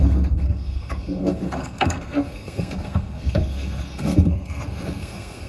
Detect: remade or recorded remade